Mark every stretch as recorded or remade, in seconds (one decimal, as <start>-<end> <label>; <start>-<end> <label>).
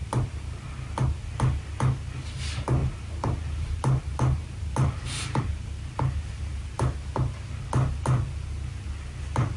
0.0-0.7 remade; 0.7-2.8 recorded; 2.8-5.4 remade; 5.4-9.6 recorded